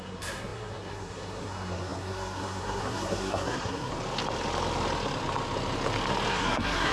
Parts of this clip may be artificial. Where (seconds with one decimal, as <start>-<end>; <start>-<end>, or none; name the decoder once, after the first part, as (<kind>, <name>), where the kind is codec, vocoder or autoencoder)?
0.0-3.9 (codec, SNAC); 6.3-6.9